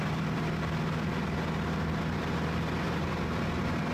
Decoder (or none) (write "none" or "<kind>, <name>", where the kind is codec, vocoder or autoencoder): none